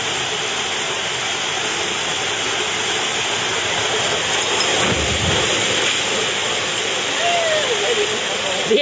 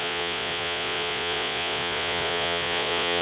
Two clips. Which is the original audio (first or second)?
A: first